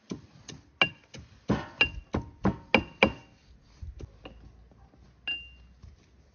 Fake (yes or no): no